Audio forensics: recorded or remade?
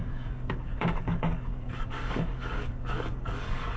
remade